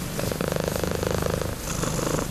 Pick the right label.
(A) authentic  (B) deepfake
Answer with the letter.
A